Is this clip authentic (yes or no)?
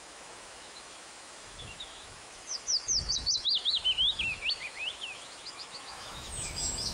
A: no